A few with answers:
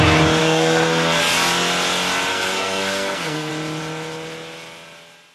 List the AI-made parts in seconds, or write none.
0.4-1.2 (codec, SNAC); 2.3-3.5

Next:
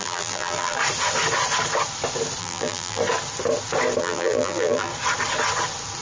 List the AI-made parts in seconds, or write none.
0.0-0.8 (vocoder, BigVGAN v2); 2.4-3.0; 4.0-4.9

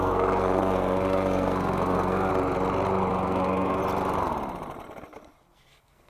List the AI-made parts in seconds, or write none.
0.0-2.3 (codec, SNAC); 3.1-3.8; 5.5-6.1